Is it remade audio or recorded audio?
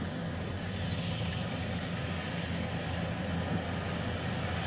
recorded